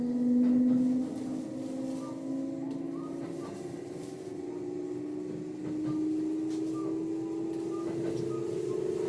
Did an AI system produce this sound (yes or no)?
no